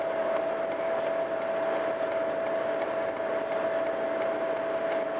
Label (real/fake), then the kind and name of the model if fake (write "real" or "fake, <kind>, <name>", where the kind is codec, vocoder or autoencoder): real